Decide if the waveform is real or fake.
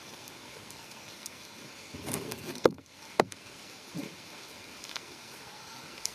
fake